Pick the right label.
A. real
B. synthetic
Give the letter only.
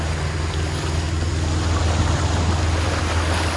A